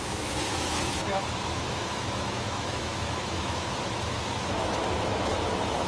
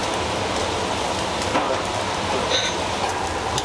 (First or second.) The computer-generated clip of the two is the first